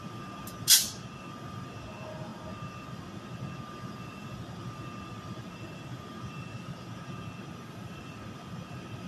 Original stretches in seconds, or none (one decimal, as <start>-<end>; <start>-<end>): 0.0-9.1